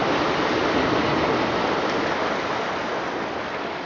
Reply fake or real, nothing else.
real